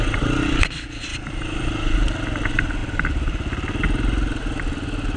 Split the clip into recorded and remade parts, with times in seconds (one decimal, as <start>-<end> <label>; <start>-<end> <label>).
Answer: 0.0-1.1 recorded; 1.1-1.7 remade; 1.7-5.2 recorded